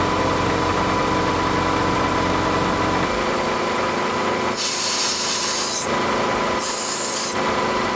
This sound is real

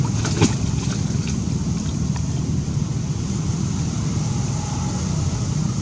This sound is real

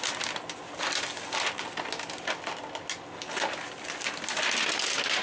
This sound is real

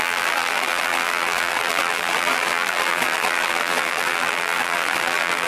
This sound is fake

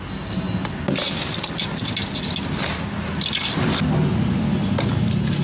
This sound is real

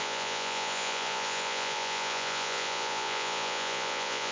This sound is fake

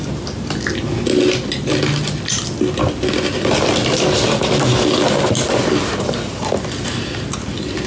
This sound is real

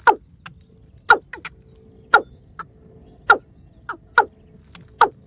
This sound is real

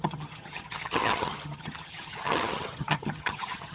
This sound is fake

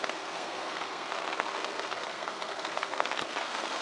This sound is fake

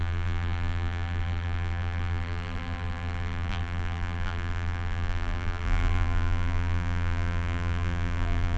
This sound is fake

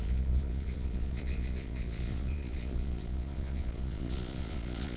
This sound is fake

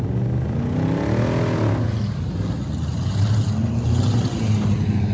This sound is real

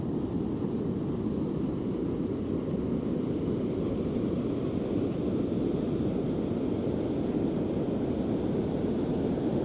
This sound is real